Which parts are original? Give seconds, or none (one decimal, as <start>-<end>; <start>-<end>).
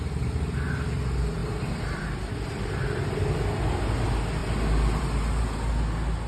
0.0-1.4; 3.1-6.3